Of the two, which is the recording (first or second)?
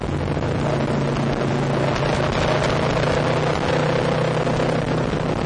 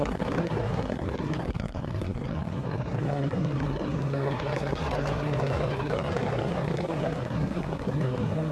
first